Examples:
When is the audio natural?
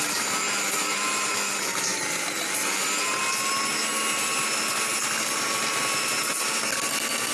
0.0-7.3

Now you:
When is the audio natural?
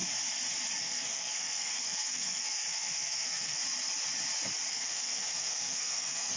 0.0-0.8; 3.6-4.7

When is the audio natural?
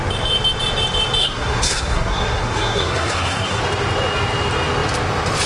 0.0-1.2; 3.6-5.5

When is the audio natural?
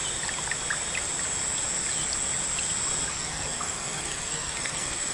0.0-3.1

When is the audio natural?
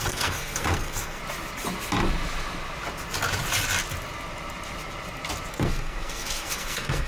1.2-5.5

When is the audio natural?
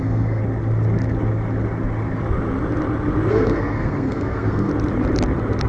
0.4-3.3; 4.7-5.7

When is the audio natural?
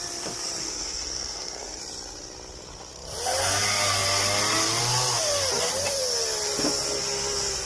0.0-0.6; 1.8-7.7